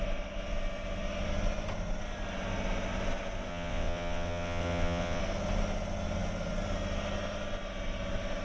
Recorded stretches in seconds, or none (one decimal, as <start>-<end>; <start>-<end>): 0.0-3.5; 5.2-8.4

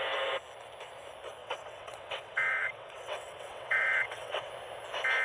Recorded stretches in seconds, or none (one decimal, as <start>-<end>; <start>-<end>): 0.0-1.4; 4.5-5.2

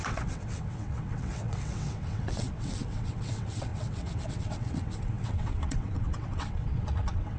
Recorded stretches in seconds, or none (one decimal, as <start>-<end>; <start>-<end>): none